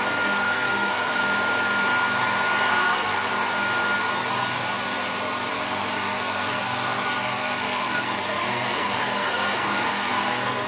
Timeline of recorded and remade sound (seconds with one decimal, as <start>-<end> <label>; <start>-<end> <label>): 0.0-1.2 remade; 1.2-2.7 recorded; 2.7-3.3 remade; 3.3-5.5 recorded; 5.5-10.7 remade